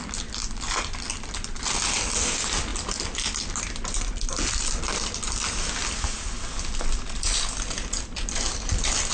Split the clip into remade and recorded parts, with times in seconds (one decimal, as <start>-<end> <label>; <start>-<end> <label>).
0.0-9.1 recorded